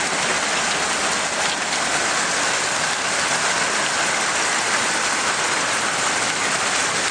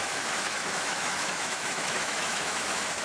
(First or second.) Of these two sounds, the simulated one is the second